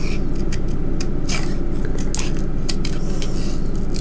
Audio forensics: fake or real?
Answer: real